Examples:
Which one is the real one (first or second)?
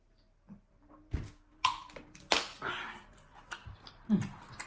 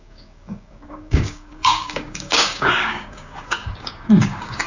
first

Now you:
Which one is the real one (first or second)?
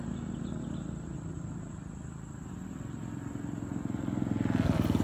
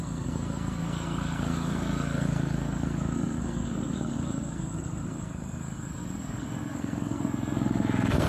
first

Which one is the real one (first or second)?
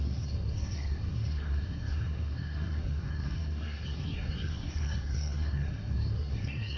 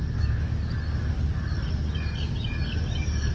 second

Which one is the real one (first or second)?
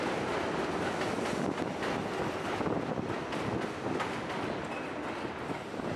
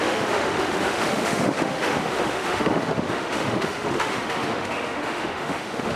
first